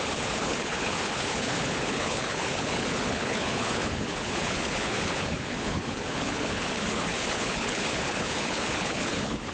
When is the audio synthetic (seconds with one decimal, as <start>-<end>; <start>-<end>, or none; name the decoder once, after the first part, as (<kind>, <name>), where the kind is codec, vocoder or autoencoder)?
0.0-9.5 (codec, HILCodec)